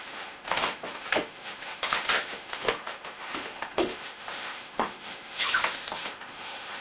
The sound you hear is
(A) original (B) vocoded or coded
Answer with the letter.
B